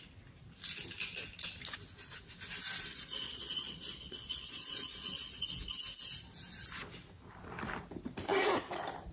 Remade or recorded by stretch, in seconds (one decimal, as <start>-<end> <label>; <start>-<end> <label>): 0.0-2.9 recorded; 2.9-5.4 remade; 5.4-9.1 recorded